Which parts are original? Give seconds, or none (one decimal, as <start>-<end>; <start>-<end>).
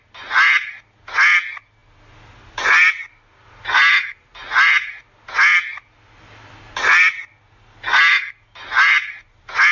0.0-9.7